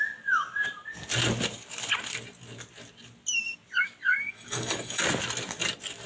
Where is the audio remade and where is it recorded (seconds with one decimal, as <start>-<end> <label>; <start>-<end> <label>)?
0.0-4.1 recorded; 4.1-5.0 remade; 5.0-6.1 recorded